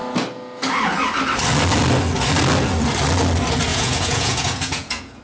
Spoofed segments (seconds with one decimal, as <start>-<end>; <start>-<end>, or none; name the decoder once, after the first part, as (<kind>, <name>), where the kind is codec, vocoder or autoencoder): 3.7-5.2 (vocoder, Vocos)